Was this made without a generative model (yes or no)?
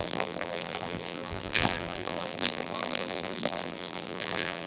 no